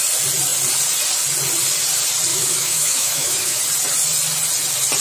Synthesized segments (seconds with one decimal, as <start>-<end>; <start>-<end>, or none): 2.3-3.6